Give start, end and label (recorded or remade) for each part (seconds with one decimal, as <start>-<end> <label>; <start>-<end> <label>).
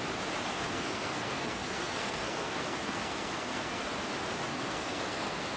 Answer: 0.0-0.5 recorded; 0.5-3.9 remade; 3.9-4.5 recorded; 4.5-5.6 remade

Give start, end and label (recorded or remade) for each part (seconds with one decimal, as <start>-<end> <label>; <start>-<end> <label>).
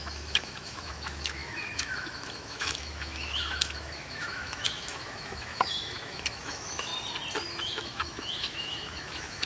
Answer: 0.0-6.9 remade; 6.9-7.6 recorded; 7.6-9.5 remade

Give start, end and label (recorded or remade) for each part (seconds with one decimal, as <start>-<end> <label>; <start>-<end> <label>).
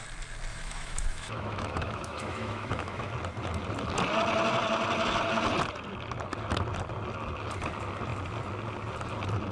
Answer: 0.0-0.5 recorded; 0.5-3.1 remade; 3.1-9.5 recorded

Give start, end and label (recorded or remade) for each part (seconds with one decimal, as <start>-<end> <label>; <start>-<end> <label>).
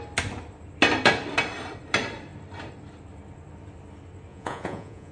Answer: 0.0-4.3 recorded; 4.3-5.1 remade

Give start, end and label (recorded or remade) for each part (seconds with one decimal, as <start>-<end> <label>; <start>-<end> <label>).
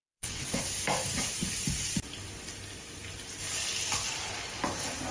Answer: 0.0-0.6 remade; 0.6-5.1 recorded